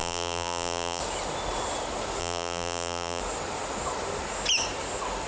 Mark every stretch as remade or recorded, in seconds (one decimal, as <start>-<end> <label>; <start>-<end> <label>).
0.0-1.0 remade; 1.0-2.2 recorded; 2.2-3.2 remade; 3.2-5.3 recorded